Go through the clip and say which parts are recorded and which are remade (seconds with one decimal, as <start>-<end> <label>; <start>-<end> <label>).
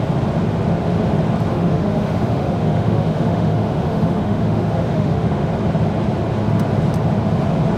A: 0.0-1.5 recorded; 1.5-5.5 remade; 5.5-7.8 recorded